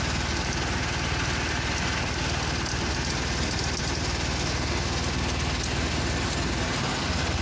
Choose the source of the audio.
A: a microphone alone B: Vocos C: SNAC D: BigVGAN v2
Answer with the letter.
A